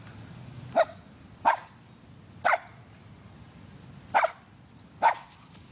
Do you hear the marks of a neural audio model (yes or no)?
no